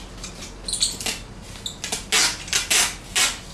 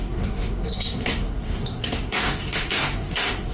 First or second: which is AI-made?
second